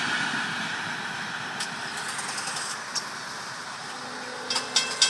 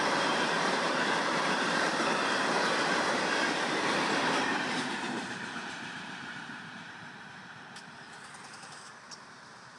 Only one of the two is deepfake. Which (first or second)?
second